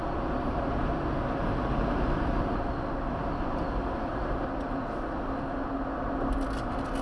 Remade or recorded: recorded